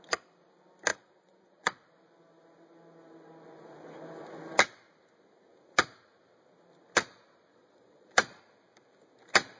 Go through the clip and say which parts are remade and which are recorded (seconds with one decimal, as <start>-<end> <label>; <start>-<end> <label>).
0.0-0.9 recorded; 0.9-1.8 remade; 1.8-7.5 recorded; 7.5-8.4 remade; 8.4-9.6 recorded